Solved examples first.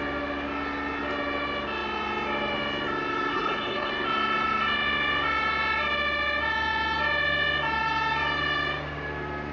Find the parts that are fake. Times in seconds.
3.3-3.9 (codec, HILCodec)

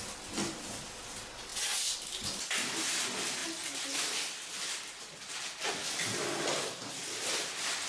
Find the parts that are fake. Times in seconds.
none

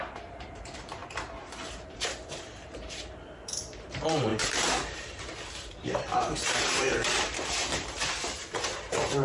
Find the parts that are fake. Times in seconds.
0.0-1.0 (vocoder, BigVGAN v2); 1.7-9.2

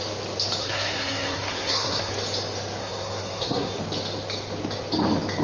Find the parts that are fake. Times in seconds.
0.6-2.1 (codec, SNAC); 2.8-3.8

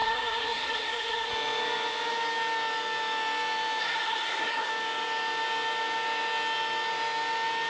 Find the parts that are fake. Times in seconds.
0.0-1.3 (codec, SNAC); 3.8-4.7

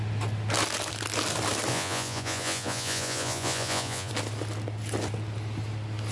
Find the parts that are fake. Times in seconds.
1.7-4.1 (vocoder, Vocos)

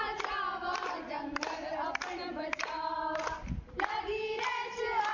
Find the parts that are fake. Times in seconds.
2.6-3.2 (vocoder, BigVGAN v2)

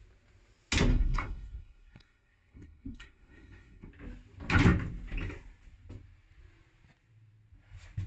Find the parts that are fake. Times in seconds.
0.9-3.9 (codec, SNAC)